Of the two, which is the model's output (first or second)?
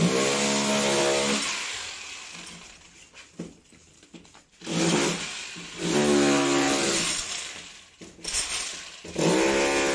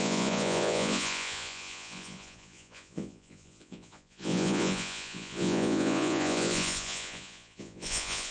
second